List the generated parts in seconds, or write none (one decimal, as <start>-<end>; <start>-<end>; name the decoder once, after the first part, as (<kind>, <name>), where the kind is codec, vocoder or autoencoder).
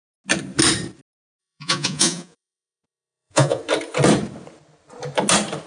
1.4-3.6 (vocoder, Vocos)